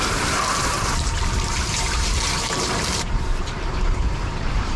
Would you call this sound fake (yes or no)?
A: yes